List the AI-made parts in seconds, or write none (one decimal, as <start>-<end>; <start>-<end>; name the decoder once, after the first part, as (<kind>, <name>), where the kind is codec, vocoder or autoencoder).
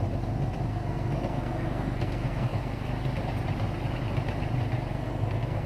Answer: 0.7-2.9 (codec, SNAC); 4.9-5.7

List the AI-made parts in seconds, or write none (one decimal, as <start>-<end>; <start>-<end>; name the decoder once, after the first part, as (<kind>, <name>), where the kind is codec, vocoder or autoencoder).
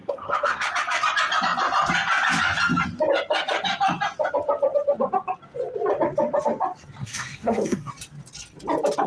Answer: 0.0-0.7 (codec, SNAC); 7.0-7.9